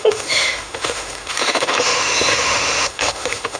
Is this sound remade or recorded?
remade